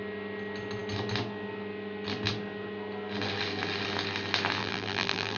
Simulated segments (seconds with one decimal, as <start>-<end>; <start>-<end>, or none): 4.6-5.4